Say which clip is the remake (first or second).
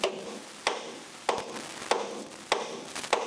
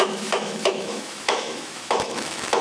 second